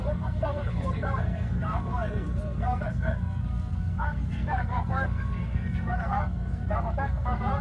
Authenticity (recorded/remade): remade